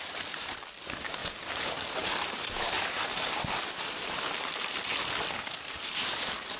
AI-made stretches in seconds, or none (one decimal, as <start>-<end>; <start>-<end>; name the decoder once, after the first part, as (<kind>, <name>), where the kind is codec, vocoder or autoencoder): 1.2-4.5 (vocoder, BigVGAN v2)